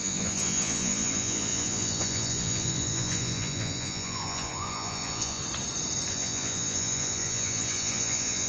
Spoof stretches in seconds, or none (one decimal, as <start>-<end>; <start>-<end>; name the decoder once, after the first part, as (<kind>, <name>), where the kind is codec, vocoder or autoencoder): 0.0-5.4 (vocoder, Vocos); 6.1-8.5